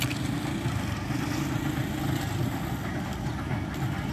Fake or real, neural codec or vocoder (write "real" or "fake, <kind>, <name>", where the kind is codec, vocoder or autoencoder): real